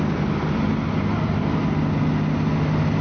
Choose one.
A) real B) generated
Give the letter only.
A